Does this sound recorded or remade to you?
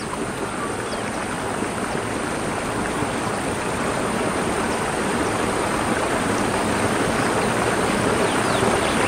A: recorded